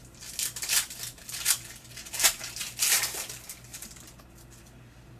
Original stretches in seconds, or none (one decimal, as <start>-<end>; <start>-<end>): 0.0-5.2